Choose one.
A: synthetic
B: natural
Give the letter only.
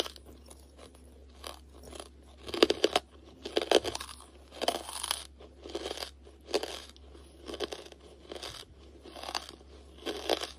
B